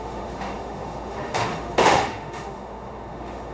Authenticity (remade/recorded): remade